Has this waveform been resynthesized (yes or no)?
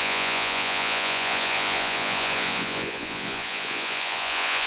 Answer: yes